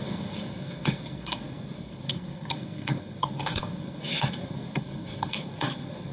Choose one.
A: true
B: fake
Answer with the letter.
B